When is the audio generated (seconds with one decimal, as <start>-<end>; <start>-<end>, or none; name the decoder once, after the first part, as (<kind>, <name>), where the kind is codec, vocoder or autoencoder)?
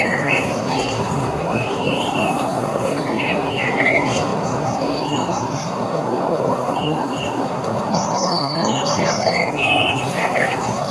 0.0-10.9 (codec, SNAC)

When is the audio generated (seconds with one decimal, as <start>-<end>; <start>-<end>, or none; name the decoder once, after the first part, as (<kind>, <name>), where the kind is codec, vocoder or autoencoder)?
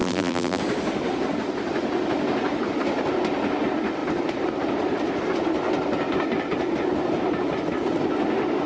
0.0-0.6 (vocoder, BigVGAN v2)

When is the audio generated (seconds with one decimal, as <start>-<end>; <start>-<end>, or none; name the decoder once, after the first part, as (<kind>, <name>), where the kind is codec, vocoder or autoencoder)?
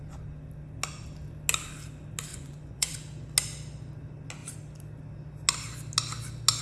2.3-2.9 (vocoder, Vocos)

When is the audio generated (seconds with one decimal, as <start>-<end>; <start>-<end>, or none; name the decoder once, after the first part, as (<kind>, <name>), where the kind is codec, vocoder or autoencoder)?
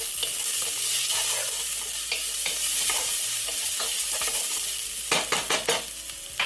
2.5-4.4 (vocoder, BigVGAN v2)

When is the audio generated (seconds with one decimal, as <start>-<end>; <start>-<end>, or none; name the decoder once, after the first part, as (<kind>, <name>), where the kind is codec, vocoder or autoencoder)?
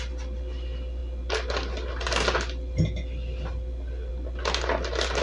none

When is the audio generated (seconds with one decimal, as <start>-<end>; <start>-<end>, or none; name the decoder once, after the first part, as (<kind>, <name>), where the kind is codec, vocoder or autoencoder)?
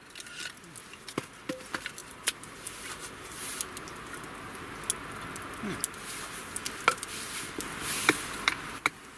2.0-2.6 (vocoder, BigVGAN v2)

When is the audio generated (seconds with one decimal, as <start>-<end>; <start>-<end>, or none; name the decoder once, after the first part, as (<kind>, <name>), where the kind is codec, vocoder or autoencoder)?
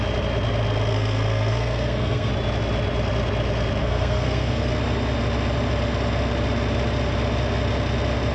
0.9-2.3 (codec, SNAC); 3.8-4.7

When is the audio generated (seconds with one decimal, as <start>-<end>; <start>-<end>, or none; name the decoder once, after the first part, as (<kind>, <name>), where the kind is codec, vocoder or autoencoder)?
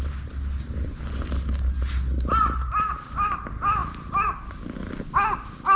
none